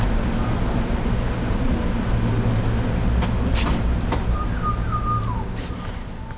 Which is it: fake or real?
real